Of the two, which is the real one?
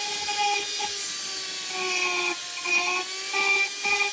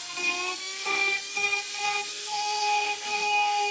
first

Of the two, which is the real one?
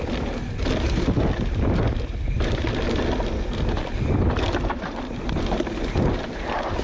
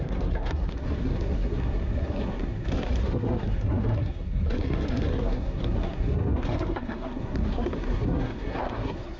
first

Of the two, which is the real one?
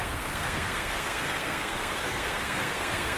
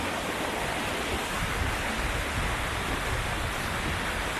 second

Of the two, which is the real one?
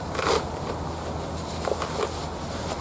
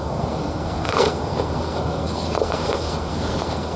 first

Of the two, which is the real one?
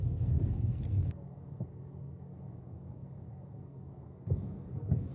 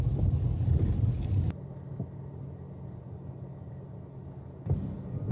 second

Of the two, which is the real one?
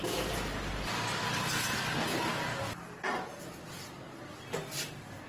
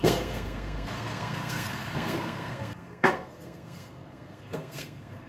first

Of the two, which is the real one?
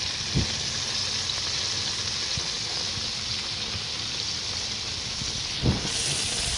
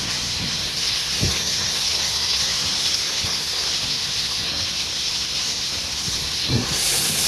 first